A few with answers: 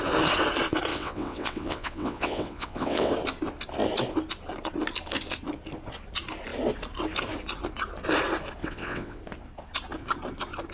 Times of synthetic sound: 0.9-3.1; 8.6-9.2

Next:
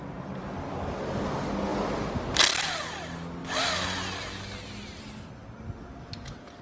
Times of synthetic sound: none

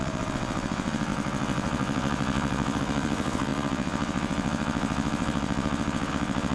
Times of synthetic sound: 0.0-6.5

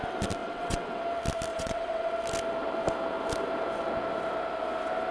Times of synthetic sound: 0.4-1.0; 1.5-2.1

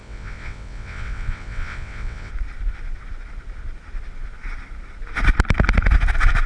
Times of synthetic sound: 0.0-2.3

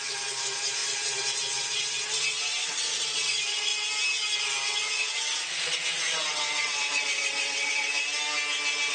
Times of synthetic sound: 0.0-3.7; 4.4-8.0

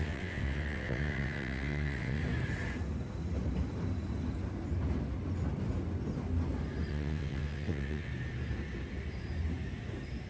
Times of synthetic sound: 0.0-2.2; 6.9-8.1